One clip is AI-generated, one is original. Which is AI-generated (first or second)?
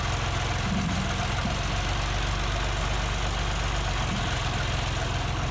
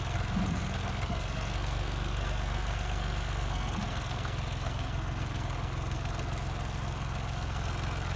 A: second